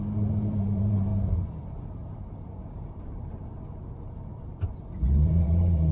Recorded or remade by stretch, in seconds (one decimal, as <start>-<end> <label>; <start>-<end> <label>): 0.0-5.9 remade